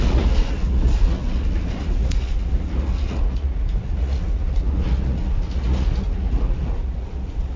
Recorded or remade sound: remade